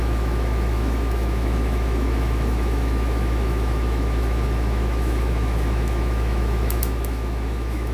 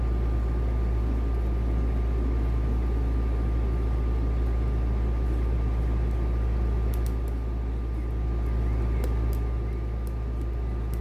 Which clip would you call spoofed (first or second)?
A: first